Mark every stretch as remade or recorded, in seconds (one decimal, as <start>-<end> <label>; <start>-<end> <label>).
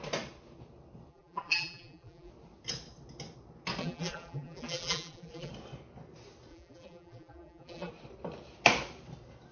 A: 0.0-1.1 recorded; 1.1-2.3 remade; 2.3-3.8 recorded; 3.8-5.5 remade; 5.5-6.5 recorded; 6.5-7.9 remade; 7.9-9.5 recorded